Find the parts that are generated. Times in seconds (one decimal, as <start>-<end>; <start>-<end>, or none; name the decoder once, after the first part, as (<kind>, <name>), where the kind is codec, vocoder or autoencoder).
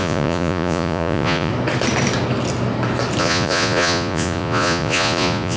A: 0.0-1.5 (vocoder, Vocos); 3.2-5.6